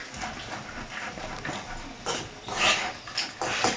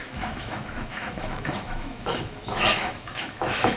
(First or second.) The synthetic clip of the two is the second